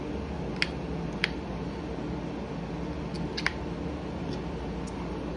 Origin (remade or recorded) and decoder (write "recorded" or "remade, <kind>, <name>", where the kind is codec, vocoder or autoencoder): recorded